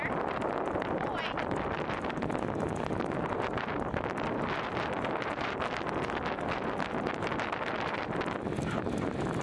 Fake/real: real